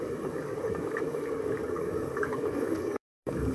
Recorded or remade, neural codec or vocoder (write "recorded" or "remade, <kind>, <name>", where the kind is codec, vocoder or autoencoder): remade, codec, DAC